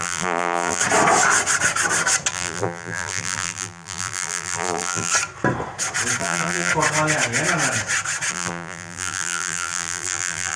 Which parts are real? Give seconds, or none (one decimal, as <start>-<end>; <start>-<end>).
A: 0.8-2.3; 5.1-6.2; 6.7-8.3